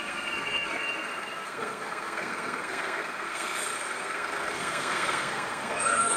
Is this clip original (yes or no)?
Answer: no